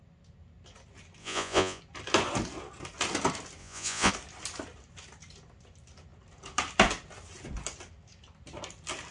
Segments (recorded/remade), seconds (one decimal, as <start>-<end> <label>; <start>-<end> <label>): 0.0-1.2 recorded; 1.2-1.8 remade; 1.8-3.6 recorded; 3.6-4.1 remade; 4.1-9.1 recorded